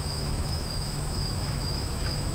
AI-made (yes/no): yes